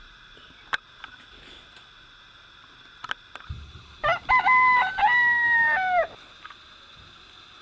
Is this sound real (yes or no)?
yes